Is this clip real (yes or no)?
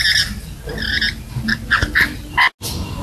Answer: yes